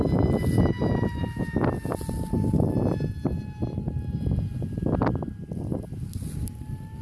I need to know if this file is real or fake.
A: real